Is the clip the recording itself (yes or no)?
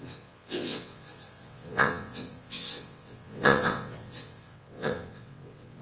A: no